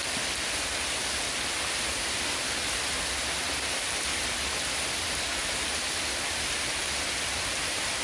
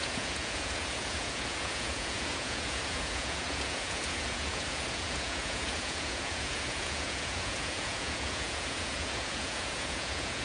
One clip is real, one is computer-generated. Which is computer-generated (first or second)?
second